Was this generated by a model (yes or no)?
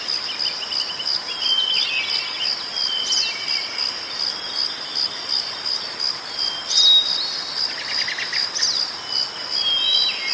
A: no